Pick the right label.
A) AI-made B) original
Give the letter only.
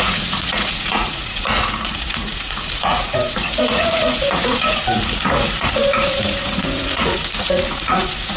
A